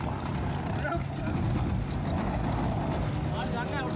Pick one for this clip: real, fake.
real